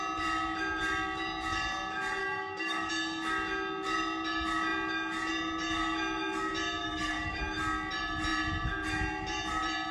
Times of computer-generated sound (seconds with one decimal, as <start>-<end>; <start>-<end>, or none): 2.2-2.9; 6.8-7.4